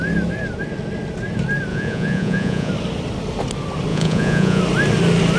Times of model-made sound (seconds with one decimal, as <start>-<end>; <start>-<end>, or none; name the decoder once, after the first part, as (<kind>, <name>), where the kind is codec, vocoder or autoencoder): 1.7-2.7 (vocoder, Vocos); 3.9-4.6